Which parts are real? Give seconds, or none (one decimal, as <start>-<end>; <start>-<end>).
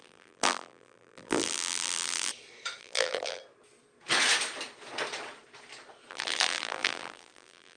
2.3-2.8; 3.4-6.1